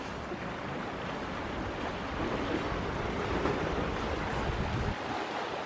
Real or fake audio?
real